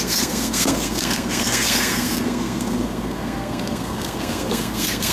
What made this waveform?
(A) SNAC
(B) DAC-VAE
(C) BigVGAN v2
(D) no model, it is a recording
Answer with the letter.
A